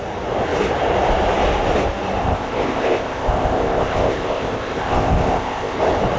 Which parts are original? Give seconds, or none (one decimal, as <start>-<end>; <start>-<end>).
0.0-2.2; 5.8-6.2